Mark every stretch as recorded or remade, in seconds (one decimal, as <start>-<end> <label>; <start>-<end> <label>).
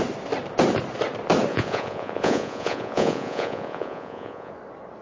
0.0-1.5 recorded; 1.5-4.5 remade; 4.5-5.0 recorded